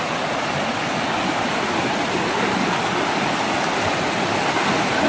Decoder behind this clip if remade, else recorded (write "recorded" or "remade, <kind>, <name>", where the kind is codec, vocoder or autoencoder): recorded